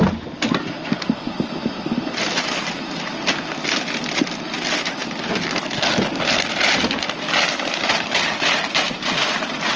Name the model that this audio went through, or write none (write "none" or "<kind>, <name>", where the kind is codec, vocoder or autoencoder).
none